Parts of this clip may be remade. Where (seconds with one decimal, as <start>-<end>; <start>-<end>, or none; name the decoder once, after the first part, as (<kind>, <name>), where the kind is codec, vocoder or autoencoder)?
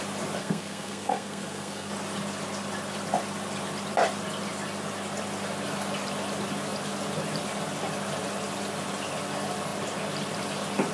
0.4-1.9 (codec, SNAC)